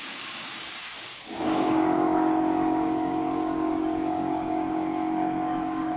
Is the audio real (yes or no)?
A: no